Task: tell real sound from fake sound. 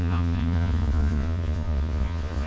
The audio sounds fake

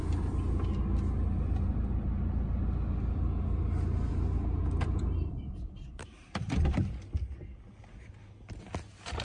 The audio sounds real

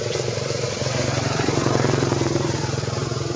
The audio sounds real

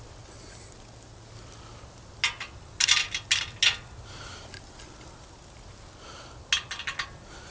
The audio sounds real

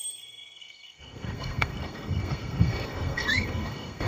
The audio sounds fake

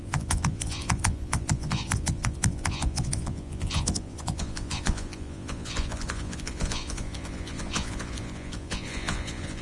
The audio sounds fake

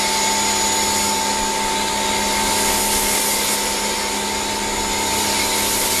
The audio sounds real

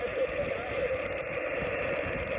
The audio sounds fake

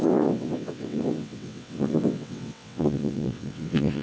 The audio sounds fake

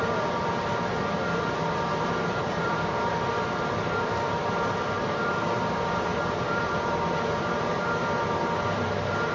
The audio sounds fake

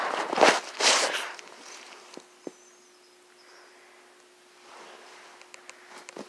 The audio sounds real